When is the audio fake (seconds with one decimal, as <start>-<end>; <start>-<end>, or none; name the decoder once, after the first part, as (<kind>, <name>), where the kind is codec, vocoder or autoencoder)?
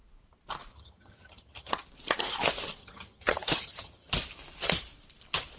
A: 0.7-1.7 (vocoder, HiFi-GAN); 2.8-4.1